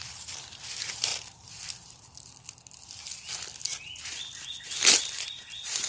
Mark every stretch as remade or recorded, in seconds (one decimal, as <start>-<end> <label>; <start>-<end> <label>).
0.0-5.9 recorded